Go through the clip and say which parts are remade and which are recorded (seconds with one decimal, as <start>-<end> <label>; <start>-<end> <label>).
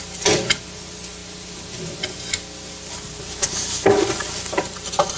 0.0-5.2 recorded